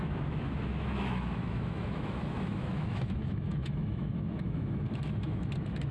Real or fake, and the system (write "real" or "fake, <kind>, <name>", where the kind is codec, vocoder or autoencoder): fake, autoencoder, DAC-VAE